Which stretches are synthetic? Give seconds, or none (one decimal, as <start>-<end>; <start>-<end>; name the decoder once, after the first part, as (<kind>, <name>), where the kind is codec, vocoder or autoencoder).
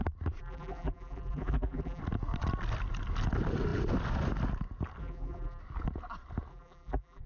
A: 0.4-2.0 (vocoder, BigVGAN v2); 5.0-5.6; 6.5-7.3